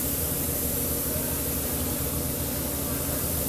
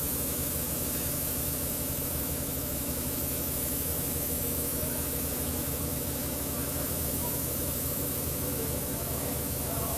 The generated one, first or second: second